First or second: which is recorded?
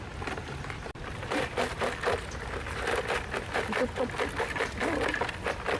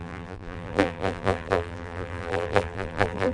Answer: first